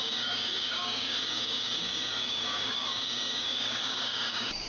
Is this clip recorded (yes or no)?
no